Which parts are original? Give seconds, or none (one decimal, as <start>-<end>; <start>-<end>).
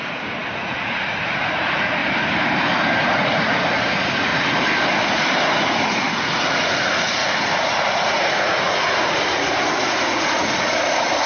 2.0-3.0; 4.3-5.6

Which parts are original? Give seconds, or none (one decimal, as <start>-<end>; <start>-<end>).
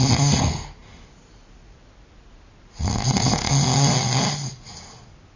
0.0-5.4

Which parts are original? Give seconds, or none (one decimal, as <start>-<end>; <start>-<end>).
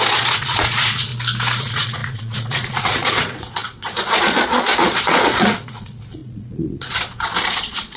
1.1-1.6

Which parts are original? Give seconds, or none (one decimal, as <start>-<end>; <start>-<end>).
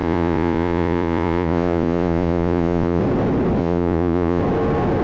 3.0-3.6; 4.4-5.0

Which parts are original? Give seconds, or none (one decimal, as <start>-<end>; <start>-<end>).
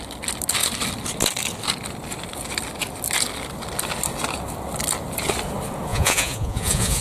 0.0-5.9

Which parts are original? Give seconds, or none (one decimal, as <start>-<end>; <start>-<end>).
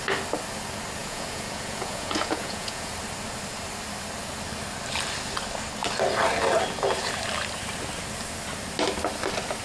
0.0-1.0; 2.9-9.6